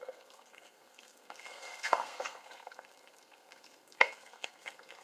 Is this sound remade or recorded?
remade